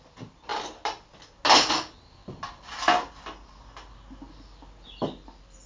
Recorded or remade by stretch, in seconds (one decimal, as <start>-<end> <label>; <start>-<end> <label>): 0.0-5.7 recorded